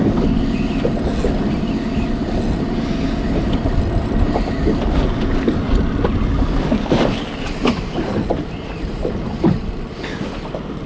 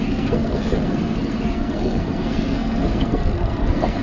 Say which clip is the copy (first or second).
second